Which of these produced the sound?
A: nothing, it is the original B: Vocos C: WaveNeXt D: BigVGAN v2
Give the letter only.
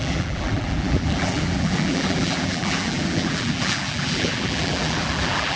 D